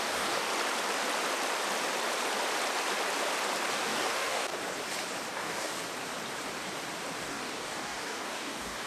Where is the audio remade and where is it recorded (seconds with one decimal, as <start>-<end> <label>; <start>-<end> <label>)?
0.0-0.5 remade; 0.5-3.7 recorded; 3.7-4.5 remade; 4.5-5.3 recorded; 5.3-5.7 remade; 5.7-7.2 recorded; 7.2-8.9 remade